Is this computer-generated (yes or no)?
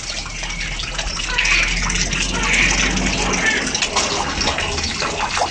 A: no